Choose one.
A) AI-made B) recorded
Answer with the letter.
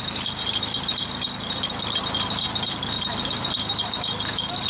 B